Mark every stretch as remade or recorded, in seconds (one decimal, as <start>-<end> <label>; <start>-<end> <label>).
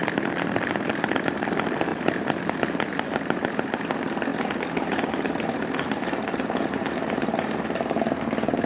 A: 0.0-0.9 recorded; 0.9-4.3 remade; 4.3-5.4 recorded; 5.4-8.7 remade